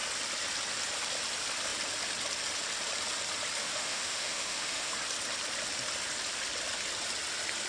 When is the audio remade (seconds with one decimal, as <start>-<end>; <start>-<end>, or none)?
3.6-4.9